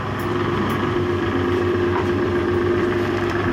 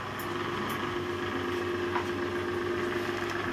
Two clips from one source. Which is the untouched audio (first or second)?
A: second